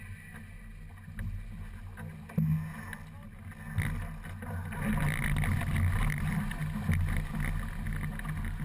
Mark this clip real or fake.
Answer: real